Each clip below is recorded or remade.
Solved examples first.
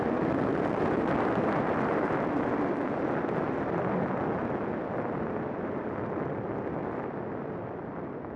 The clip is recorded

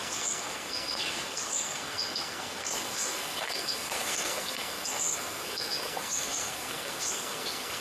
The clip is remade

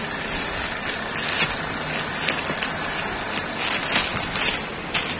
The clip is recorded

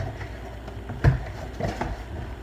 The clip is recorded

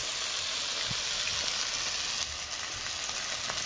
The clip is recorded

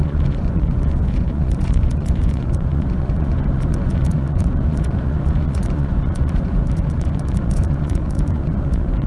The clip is remade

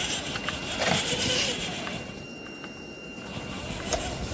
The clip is recorded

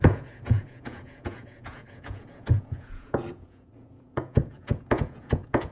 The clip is remade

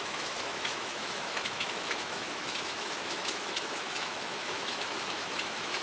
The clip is remade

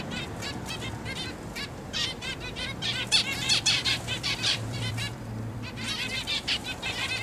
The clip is remade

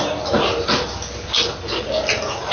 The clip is recorded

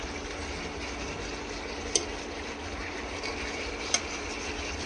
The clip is recorded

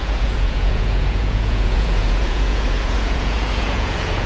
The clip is remade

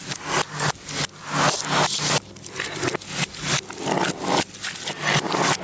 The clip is recorded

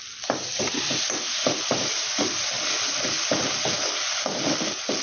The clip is recorded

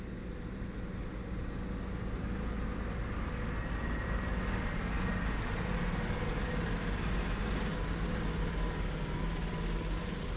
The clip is recorded